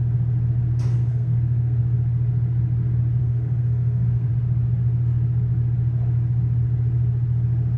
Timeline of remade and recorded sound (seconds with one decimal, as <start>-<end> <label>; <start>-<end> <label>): 0.0-0.9 recorded; 0.9-1.8 remade; 1.8-3.2 recorded; 3.2-4.3 remade; 4.3-7.8 recorded